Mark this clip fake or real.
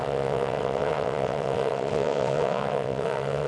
fake